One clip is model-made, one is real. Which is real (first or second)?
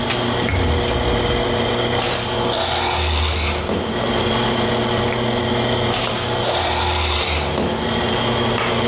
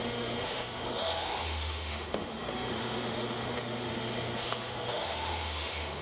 first